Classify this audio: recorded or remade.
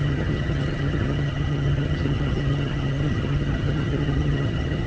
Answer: remade